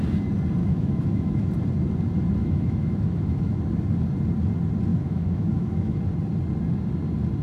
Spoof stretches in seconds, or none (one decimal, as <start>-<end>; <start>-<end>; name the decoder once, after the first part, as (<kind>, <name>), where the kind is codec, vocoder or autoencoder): 0.6-1.5 (autoencoder, DAC-VAE); 2.4-3.6; 4.9-6.0